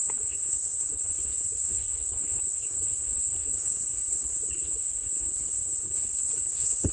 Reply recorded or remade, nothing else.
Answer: remade